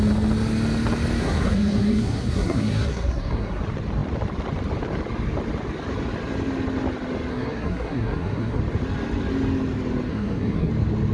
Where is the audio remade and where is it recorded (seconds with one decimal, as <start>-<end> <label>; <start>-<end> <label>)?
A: 0.0-1.2 recorded; 1.2-3.6 remade; 3.6-7.3 recorded; 7.3-8.6 remade; 8.6-10.1 recorded; 10.1-10.7 remade; 10.7-11.1 recorded